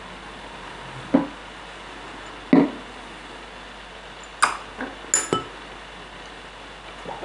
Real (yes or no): yes